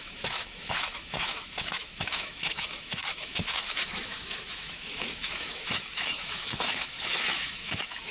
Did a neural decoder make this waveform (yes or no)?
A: yes